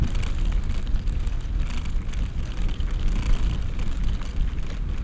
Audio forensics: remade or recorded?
recorded